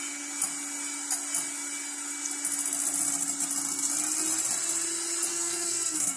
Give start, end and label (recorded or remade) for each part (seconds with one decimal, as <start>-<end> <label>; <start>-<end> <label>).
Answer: 0.0-5.3 recorded; 5.3-6.2 remade